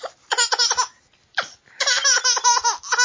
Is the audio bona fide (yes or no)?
yes